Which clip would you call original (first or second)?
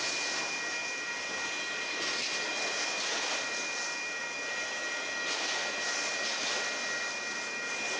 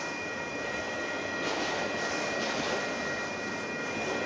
first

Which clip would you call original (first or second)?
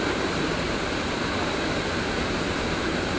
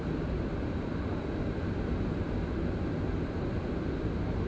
second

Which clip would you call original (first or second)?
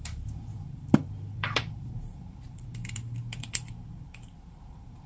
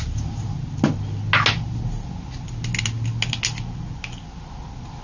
second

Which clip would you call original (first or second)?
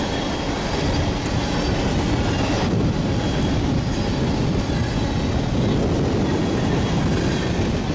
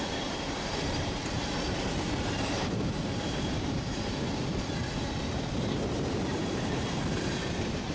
first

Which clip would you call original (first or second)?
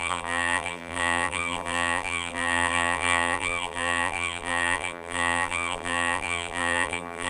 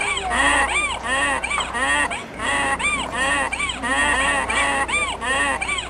second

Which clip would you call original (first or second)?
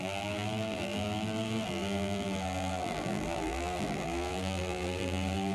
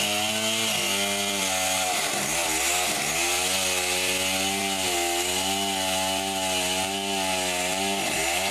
second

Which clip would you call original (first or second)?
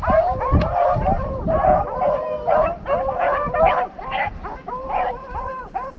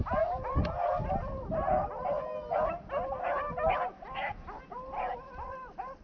second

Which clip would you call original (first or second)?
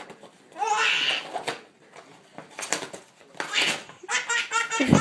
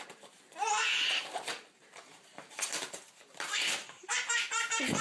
first